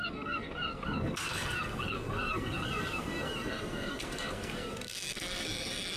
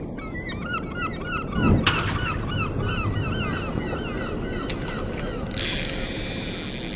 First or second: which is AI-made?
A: first